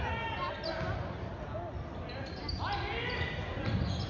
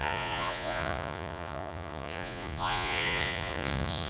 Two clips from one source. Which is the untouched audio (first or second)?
first